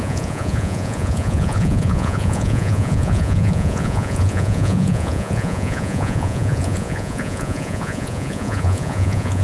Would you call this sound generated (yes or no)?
yes